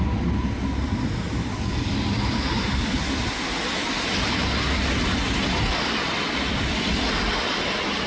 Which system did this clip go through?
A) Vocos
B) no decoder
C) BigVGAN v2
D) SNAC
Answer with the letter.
B